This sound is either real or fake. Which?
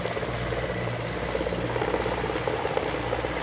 real